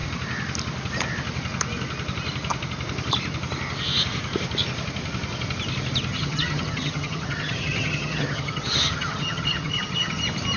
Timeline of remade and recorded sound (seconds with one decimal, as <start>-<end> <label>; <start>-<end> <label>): 0.0-6.1 recorded; 6.1-10.2 remade; 10.2-10.6 recorded